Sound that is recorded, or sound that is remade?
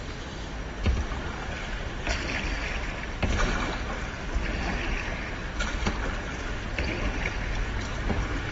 recorded